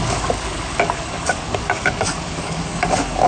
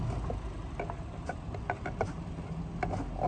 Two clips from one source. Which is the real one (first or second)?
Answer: second